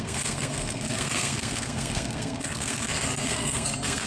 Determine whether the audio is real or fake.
fake